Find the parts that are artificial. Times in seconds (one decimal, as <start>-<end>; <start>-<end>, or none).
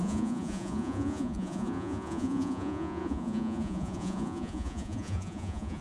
0.0-5.8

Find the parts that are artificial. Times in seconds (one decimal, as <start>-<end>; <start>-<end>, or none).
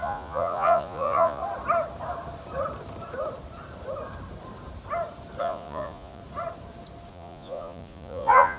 0.0-1.4; 5.4-6.2; 7.1-8.6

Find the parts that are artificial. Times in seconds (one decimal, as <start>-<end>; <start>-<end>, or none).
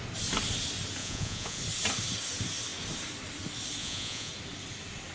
1.0-1.6; 3.8-4.3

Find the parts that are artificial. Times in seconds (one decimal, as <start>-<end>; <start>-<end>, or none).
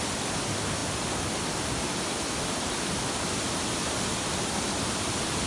none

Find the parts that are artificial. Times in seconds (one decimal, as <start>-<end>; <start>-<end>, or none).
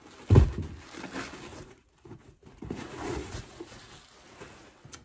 1.5-3.9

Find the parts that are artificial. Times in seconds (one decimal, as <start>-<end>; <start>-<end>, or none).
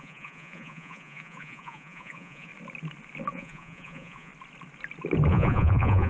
0.0-2.5; 3.3-4.3; 5.3-6.1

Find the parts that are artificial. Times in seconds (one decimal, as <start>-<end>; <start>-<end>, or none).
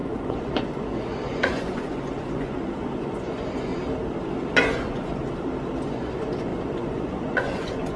0.0-3.7; 4.6-5.2; 5.8-8.0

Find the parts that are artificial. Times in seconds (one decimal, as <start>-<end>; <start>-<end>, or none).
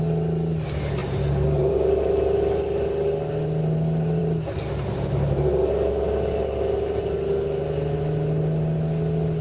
none